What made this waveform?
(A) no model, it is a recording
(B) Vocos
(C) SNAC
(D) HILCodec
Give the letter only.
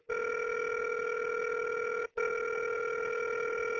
A